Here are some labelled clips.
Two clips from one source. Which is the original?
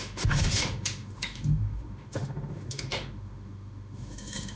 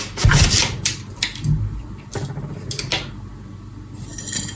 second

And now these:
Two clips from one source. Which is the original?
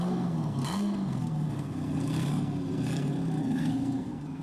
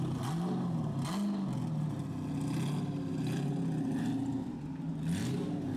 second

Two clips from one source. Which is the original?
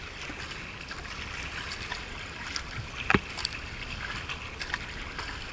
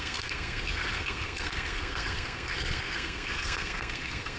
first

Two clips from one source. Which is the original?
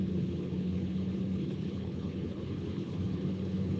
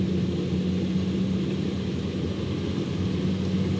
second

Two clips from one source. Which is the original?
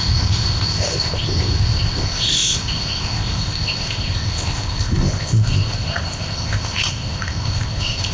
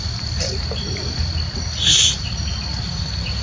second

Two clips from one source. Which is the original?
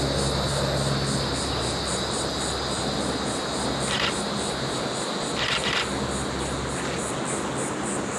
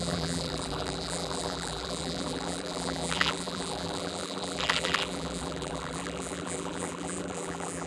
first